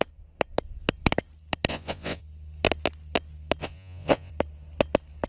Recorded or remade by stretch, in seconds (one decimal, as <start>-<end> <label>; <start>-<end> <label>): 0.0-1.7 recorded; 1.7-2.2 remade; 2.2-3.6 recorded; 3.6-4.3 remade; 4.3-5.3 recorded